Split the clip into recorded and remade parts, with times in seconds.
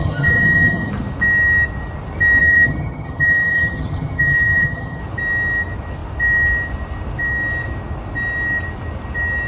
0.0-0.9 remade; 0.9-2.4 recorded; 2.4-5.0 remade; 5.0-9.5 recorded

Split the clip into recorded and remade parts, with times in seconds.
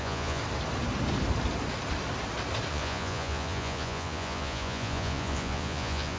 0.0-0.4 remade; 0.4-2.7 recorded; 2.7-6.2 remade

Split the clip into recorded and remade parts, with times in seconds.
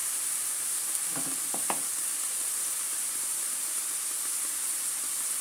0.0-5.4 remade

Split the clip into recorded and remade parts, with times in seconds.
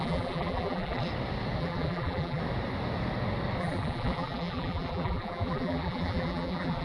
0.0-1.1 remade; 1.1-1.6 recorded; 1.6-2.4 remade; 2.4-3.6 recorded; 3.6-6.8 remade